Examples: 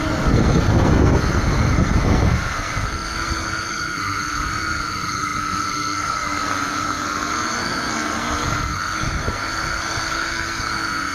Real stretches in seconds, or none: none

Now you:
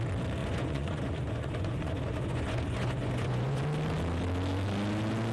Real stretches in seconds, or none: 0.0-0.4; 3.6-5.3

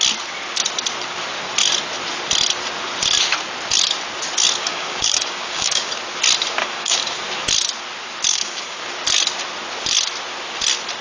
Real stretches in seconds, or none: 0.0-4.6; 5.9-6.6; 7.2-8.3; 8.8-11.0

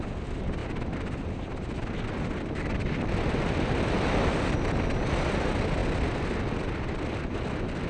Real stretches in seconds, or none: 0.0-7.9

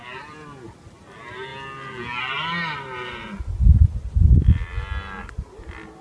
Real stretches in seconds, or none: 1.5-2.2; 3.2-5.2